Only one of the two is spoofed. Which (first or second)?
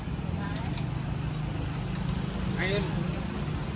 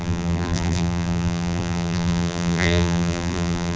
second